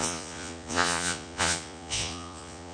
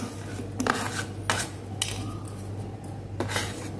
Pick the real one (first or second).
second